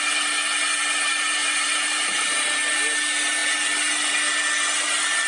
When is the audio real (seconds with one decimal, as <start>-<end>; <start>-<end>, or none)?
0.0-1.4; 2.3-5.3